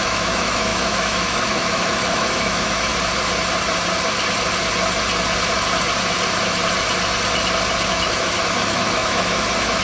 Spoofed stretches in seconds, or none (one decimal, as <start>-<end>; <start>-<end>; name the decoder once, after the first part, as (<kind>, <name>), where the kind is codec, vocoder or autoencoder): 0.0-2.9 (autoencoder, DAC-VAE); 7.9-9.8